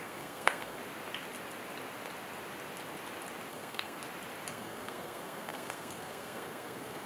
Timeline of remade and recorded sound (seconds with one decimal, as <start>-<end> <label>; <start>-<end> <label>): 0.0-0.8 remade; 0.8-3.5 recorded; 3.5-4.0 remade; 4.0-4.5 recorded; 4.5-7.1 remade